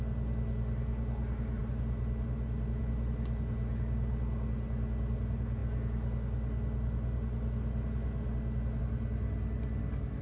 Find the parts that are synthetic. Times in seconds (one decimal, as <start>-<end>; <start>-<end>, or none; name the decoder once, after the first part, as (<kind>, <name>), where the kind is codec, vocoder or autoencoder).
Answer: none